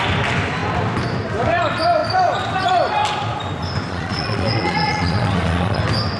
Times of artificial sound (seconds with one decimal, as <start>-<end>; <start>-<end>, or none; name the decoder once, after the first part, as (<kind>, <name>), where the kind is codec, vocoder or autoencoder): 3.9-5.8 (vocoder, Vocos)